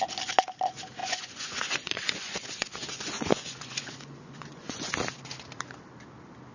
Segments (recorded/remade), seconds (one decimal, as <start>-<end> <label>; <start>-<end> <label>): 0.0-1.0 recorded; 1.0-4.9 remade; 4.9-6.5 recorded